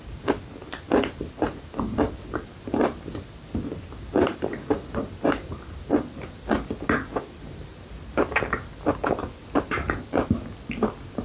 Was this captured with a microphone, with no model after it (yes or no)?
yes